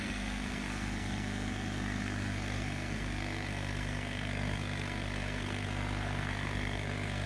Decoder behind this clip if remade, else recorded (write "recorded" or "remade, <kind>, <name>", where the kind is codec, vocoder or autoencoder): remade, codec, SNAC